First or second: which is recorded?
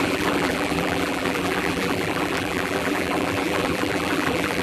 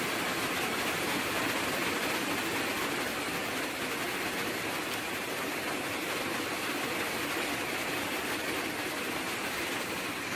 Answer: second